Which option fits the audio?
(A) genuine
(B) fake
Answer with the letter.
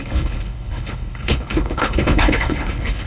B